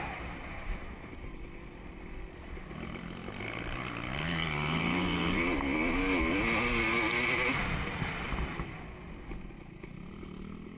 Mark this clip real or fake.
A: real